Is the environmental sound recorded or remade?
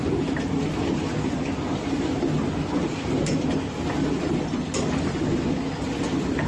recorded